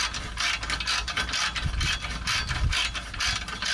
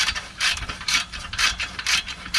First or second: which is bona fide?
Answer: first